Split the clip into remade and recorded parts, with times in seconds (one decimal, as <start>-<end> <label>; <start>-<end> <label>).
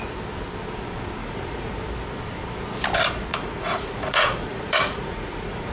0.0-1.2 recorded; 1.2-1.7 remade; 1.7-3.3 recorded; 3.3-5.7 remade